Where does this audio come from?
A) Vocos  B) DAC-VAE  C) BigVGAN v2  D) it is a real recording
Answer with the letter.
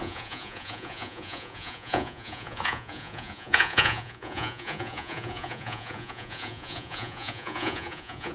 A